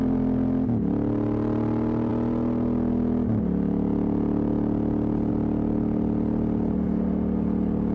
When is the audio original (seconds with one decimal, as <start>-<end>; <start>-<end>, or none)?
0.0-7.9